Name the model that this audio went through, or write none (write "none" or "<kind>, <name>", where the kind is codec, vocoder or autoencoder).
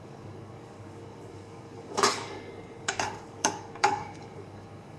codec, DAC